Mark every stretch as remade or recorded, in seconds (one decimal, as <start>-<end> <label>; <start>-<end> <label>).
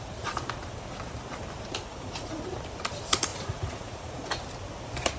0.0-1.9 recorded; 1.9-2.5 remade; 2.5-3.3 recorded; 3.3-4.3 remade; 4.3-5.2 recorded